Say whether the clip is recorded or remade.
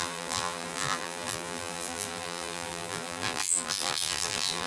remade